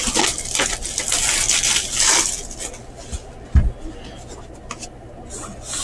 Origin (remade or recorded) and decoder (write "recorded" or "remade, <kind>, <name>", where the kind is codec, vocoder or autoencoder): recorded